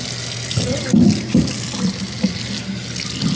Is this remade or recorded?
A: recorded